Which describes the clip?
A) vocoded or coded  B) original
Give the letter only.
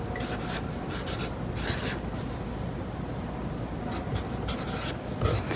B